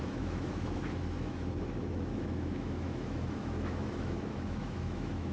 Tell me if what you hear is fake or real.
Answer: fake